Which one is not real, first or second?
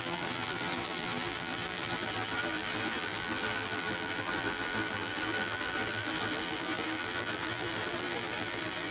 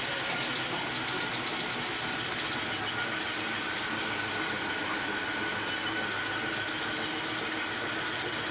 first